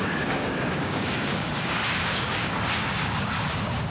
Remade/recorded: remade